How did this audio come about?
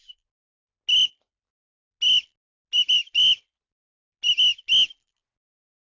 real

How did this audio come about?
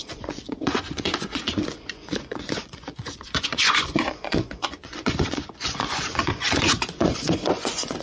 fake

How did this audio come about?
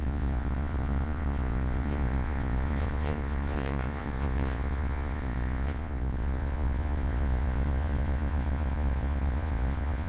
fake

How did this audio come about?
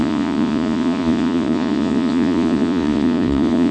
fake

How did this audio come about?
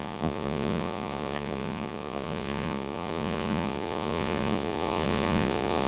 fake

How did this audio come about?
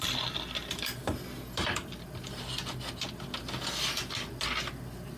real